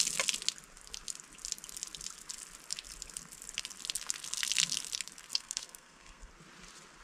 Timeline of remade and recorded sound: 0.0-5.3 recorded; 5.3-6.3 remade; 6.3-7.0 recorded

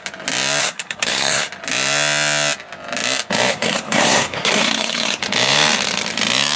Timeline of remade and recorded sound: 0.0-0.6 recorded; 0.6-1.5 remade; 1.5-3.5 recorded; 3.5-5.2 remade; 5.2-6.6 recorded

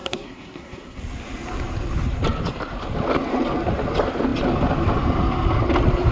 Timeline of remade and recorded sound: 0.0-1.0 remade; 1.0-6.1 recorded

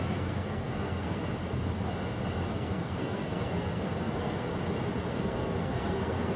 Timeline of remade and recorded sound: 0.0-1.3 remade; 1.3-2.5 recorded; 2.5-4.5 remade; 4.5-5.1 recorded; 5.1-6.4 remade

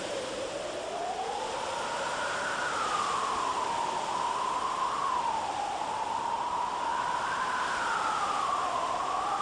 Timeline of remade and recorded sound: 0.0-9.4 recorded

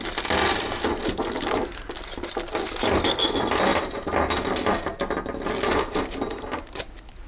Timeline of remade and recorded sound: 0.0-7.3 recorded